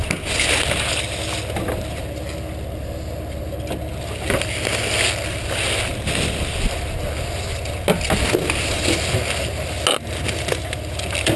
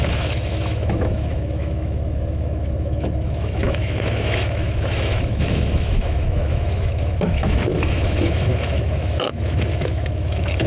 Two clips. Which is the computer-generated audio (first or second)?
second